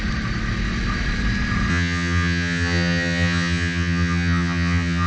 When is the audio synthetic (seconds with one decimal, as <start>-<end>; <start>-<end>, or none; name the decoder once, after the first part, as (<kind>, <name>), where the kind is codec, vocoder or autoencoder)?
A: 1.7-5.1 (vocoder, HiFi-GAN)